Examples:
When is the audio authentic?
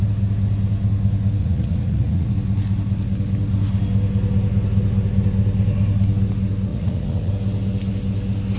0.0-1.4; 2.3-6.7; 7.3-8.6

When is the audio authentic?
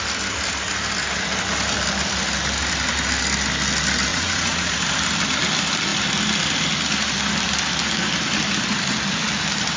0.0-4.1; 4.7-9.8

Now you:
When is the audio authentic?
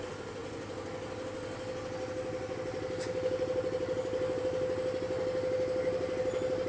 0.0-6.7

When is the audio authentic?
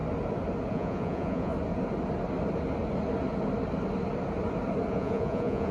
0.0-0.7; 1.5-4.9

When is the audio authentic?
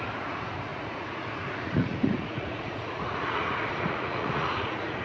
none